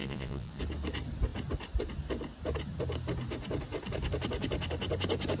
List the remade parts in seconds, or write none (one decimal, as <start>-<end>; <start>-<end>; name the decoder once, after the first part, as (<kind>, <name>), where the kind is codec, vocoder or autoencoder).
0.0-0.6 (vocoder, Vocos)